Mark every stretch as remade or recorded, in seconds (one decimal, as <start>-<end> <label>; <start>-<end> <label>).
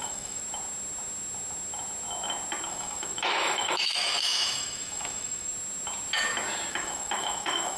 0.0-0.4 remade; 0.4-2.7 recorded; 2.7-5.5 remade; 5.5-6.7 recorded; 6.7-7.8 remade